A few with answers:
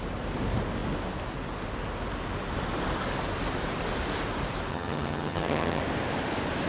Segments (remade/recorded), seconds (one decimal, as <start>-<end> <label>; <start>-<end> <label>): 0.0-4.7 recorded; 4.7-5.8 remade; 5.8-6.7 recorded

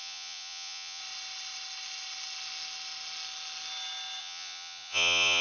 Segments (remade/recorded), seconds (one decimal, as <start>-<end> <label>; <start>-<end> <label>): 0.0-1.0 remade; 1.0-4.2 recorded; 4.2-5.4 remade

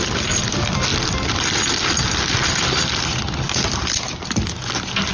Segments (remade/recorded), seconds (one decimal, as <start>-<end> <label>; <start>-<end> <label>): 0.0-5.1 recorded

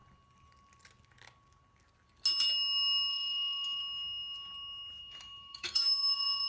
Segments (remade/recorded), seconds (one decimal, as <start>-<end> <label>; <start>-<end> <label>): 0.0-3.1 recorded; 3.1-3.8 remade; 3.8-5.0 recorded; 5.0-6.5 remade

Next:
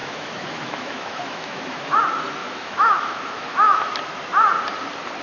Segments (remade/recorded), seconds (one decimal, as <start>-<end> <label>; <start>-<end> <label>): 0.0-2.0 remade; 2.0-2.4 recorded; 2.4-3.9 remade; 3.9-5.2 recorded

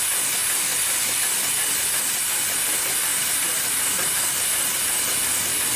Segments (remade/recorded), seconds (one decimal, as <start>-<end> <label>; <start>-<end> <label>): 0.0-0.4 recorded; 0.4-1.5 remade; 1.5-5.8 recorded

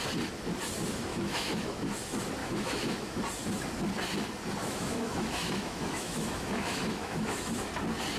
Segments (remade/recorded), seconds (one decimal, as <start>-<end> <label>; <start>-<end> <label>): 0.0-1.1 recorded; 1.1-1.9 remade; 1.9-2.4 recorded; 2.4-3.2 remade; 3.2-4.6 recorded; 4.6-7.6 remade; 7.6-8.2 recorded

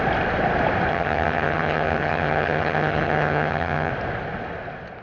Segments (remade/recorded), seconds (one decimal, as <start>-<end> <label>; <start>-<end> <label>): 0.0-0.9 recorded; 0.9-3.9 remade; 3.9-5.0 recorded